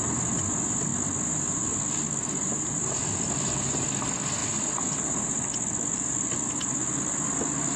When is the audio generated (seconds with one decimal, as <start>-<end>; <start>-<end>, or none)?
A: none